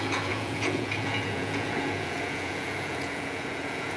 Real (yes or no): no